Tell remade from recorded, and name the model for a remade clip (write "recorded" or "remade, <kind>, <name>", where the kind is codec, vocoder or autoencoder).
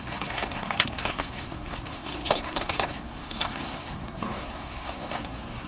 remade, codec, SNAC